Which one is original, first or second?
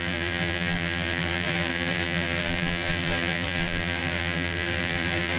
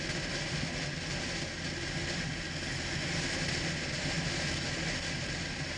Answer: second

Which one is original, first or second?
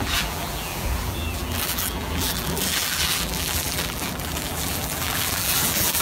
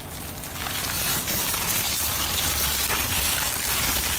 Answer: second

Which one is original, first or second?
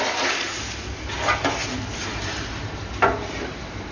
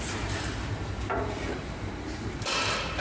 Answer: second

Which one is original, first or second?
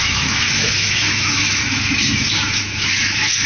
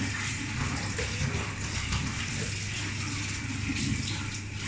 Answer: second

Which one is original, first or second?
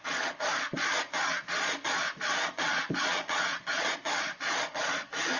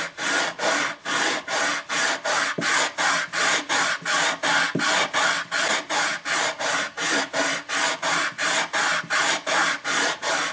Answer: second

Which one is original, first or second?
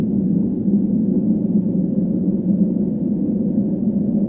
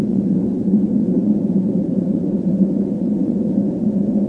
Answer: first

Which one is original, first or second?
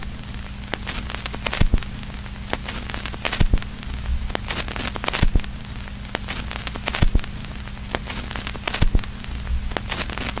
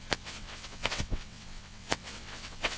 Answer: first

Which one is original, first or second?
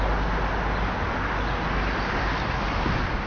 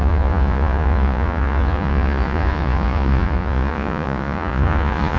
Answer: first